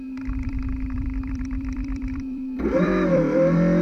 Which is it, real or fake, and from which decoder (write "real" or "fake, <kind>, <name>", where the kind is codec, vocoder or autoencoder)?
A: fake, vocoder, BigVGAN v2